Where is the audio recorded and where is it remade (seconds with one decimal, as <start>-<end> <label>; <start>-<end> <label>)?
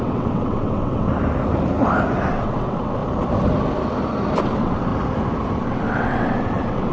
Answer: 0.0-1.1 remade; 1.1-2.3 recorded; 2.3-3.0 remade; 3.0-4.4 recorded; 4.4-4.9 remade; 4.9-5.6 recorded; 5.6-6.9 remade